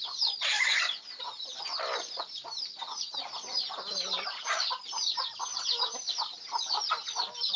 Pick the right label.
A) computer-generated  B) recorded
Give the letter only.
B